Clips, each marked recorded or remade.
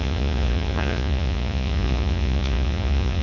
remade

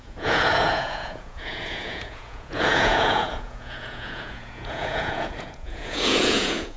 remade